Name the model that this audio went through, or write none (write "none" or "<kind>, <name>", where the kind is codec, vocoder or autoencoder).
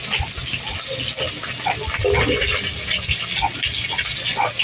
none